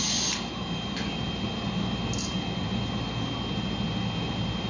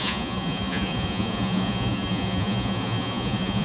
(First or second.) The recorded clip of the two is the first